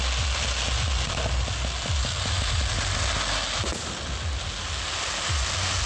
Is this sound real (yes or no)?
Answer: yes